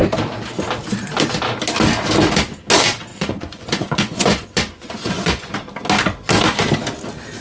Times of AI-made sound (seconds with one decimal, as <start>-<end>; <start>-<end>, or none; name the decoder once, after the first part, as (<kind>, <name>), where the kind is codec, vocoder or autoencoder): 3.1-5.5 (vocoder, Vocos)